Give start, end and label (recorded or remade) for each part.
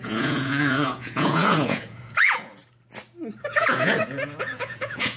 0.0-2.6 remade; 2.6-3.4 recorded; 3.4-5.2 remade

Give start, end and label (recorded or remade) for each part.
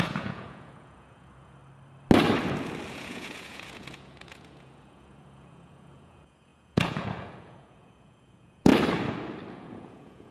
0.0-1.6 remade; 1.6-2.9 recorded; 2.9-8.7 remade; 8.7-9.5 recorded; 9.5-10.3 remade